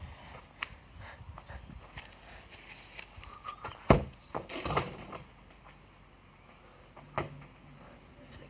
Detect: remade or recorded recorded